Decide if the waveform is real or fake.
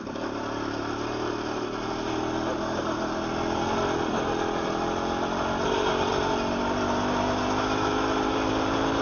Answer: real